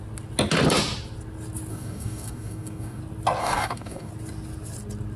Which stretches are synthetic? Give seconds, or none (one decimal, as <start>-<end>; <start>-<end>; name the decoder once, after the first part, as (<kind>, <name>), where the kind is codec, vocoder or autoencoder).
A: 1.7-3.0 (codec, DAC); 3.4-4.1